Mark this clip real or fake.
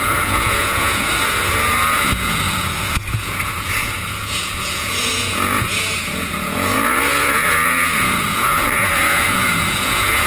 fake